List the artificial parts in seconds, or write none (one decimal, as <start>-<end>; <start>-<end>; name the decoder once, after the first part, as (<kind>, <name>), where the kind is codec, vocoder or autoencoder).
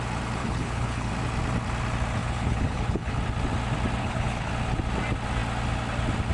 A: 0.4-1.1 (codec, HILCodec); 2.2-3.2; 4.0-4.5